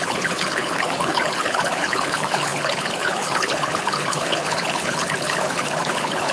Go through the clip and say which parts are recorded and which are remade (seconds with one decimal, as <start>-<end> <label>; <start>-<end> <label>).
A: 0.0-6.3 remade